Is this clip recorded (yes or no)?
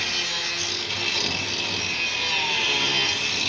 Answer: yes